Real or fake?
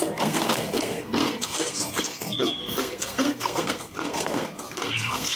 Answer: fake